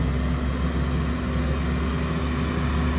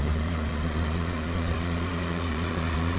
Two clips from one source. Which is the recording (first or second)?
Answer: first